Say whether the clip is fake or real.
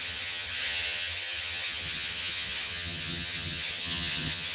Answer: fake